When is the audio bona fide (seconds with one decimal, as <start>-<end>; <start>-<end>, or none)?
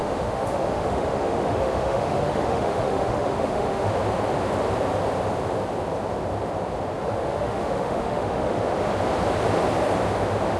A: 3.9-7.0; 8.6-10.6